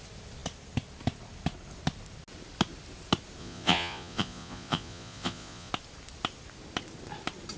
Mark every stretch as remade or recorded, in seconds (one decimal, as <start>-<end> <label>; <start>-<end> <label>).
0.0-3.4 recorded; 3.4-5.7 remade; 5.7-7.6 recorded